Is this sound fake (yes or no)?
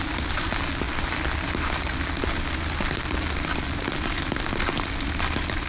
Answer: no